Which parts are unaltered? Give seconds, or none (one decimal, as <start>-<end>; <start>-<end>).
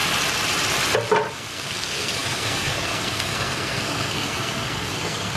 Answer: 0.0-1.3